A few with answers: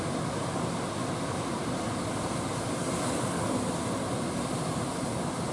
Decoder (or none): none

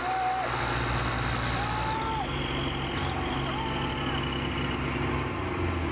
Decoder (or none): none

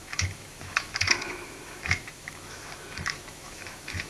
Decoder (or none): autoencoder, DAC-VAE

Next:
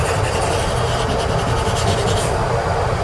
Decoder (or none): none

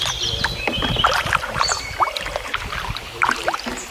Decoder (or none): none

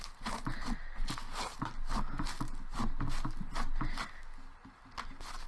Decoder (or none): none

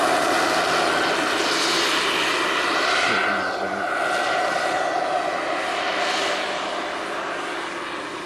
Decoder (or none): none